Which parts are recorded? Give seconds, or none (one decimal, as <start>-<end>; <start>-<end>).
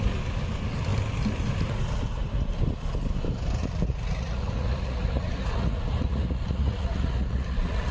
0.0-3.6